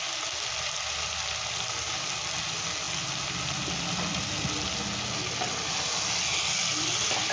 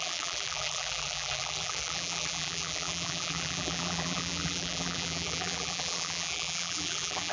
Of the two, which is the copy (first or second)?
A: second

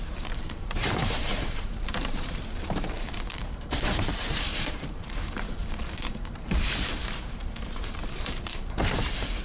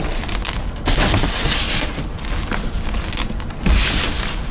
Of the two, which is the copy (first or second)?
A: first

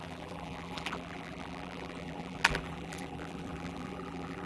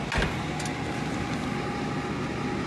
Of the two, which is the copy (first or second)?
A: first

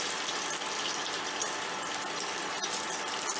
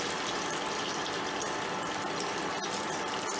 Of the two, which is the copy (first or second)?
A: second